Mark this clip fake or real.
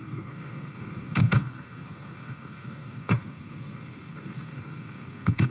fake